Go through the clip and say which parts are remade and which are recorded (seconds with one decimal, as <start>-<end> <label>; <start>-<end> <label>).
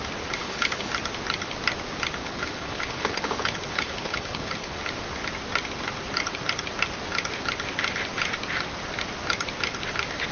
0.0-0.4 recorded; 0.4-0.9 remade; 0.9-2.2 recorded; 2.2-4.8 remade; 4.8-10.3 recorded